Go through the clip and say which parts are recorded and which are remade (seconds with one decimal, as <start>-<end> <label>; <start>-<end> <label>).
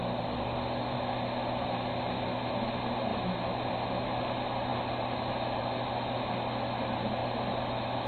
0.0-8.1 recorded